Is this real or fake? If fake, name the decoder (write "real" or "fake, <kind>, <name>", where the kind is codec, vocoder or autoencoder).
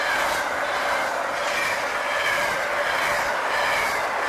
real